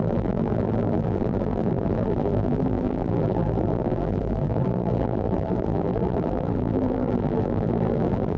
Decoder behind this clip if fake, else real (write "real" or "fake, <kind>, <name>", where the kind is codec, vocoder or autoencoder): fake, vocoder, BigVGAN v2